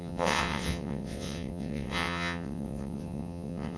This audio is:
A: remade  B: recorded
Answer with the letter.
A